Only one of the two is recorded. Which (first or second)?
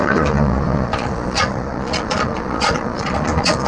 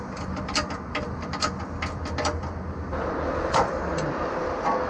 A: second